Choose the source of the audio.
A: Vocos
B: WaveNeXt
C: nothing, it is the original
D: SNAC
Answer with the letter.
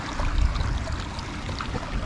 C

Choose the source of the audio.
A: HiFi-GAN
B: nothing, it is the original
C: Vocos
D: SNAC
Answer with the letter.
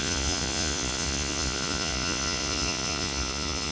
C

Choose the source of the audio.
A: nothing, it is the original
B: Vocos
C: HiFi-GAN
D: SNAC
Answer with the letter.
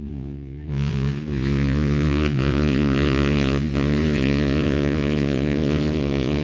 B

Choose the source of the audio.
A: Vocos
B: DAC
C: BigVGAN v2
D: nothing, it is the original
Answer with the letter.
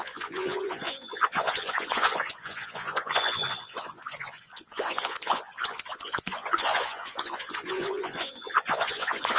A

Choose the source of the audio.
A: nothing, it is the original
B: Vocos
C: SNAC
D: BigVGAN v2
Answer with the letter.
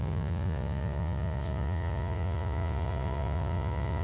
B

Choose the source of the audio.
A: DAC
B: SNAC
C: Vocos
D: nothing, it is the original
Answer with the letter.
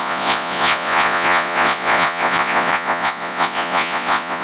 C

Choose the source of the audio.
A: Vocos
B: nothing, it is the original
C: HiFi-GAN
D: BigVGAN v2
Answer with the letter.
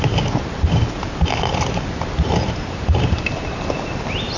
B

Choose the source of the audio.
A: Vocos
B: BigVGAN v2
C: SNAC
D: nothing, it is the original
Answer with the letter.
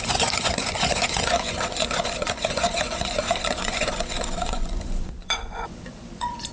A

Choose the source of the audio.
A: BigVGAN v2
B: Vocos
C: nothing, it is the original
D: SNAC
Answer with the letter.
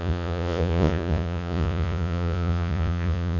B